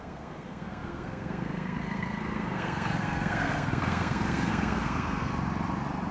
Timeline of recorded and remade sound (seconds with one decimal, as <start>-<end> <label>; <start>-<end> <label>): 0.0-5.3 remade; 5.3-6.1 recorded